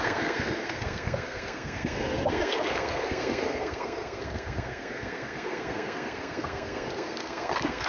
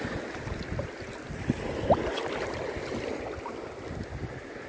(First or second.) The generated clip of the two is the first